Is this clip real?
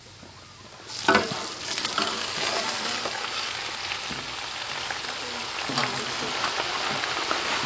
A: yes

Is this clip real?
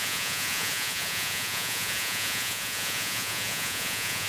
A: no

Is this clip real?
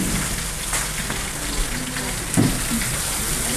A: yes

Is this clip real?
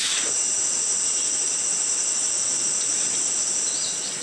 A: yes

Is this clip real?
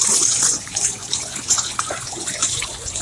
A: no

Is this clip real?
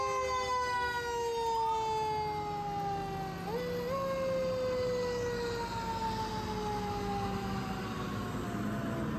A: yes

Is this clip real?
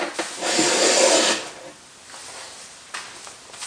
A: yes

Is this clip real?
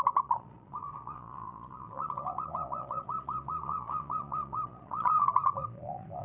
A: no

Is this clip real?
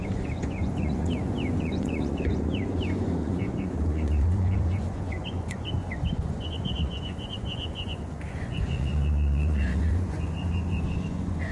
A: no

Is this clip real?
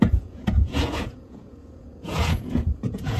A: no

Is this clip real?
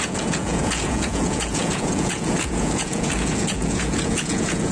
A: no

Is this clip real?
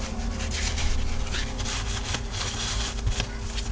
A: yes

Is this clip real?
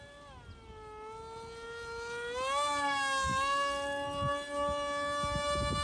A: yes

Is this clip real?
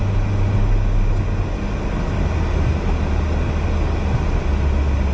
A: yes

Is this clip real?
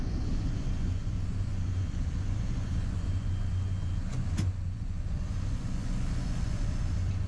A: no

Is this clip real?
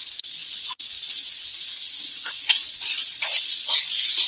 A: no